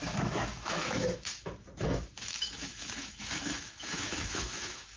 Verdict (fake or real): fake